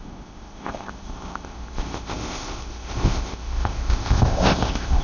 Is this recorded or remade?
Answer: remade